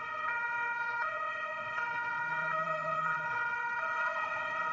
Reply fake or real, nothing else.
fake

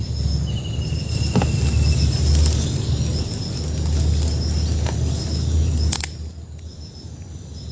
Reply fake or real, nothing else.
real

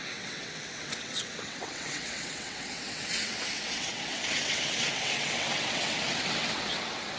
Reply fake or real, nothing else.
fake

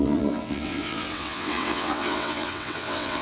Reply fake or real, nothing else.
fake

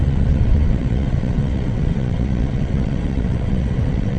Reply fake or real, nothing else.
fake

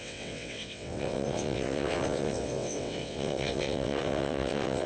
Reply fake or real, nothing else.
fake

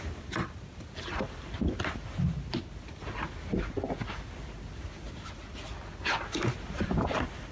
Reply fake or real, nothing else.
real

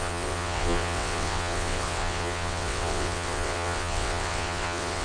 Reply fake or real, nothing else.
fake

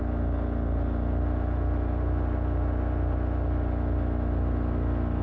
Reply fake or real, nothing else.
real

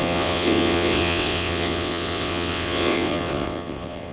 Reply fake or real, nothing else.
fake